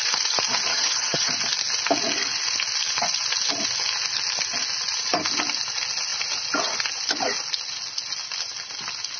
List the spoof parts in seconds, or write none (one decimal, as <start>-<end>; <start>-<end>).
0.7-1.3